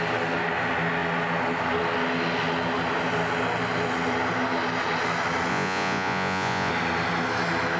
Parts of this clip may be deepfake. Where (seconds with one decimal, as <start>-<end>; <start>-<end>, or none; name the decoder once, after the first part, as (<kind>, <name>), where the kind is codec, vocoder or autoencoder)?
5.5-6.7 (vocoder, Vocos)